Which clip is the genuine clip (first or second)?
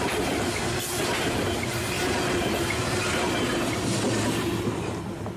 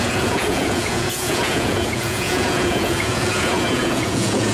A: first